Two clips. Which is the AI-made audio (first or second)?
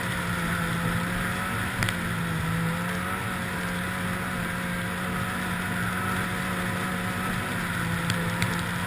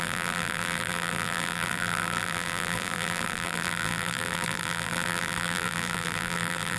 second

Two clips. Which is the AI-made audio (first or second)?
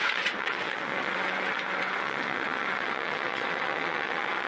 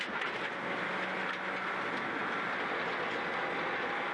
first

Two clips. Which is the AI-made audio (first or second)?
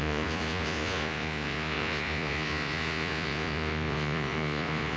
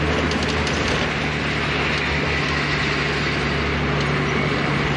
first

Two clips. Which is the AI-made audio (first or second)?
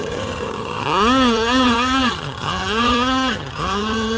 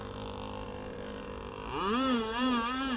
first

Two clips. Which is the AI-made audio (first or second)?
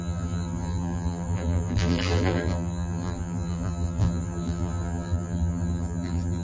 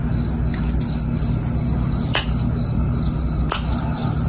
first